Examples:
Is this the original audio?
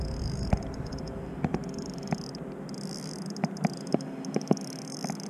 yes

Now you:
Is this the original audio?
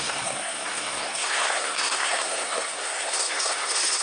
no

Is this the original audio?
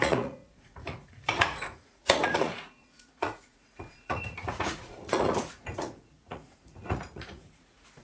no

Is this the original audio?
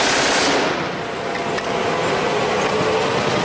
yes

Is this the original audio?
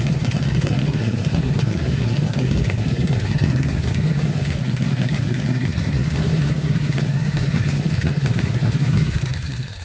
no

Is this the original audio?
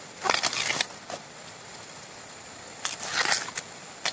yes